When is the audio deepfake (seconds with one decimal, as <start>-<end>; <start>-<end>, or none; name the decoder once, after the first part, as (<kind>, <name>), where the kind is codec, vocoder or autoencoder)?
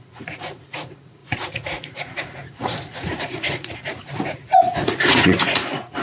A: 0.0-6.0 (vocoder, Vocos)